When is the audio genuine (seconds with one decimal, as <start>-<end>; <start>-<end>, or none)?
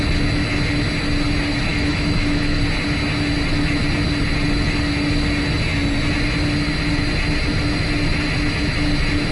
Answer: 0.0-1.7; 2.6-9.3